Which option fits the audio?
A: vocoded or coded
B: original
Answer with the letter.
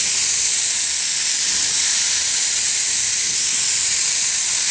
B